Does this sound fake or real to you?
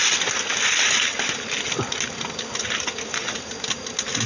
real